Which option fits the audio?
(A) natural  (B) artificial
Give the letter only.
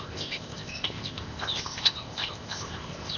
B